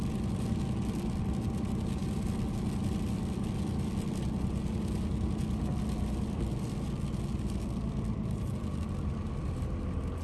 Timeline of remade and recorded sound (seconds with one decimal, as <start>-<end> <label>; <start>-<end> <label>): 0.0-10.2 recorded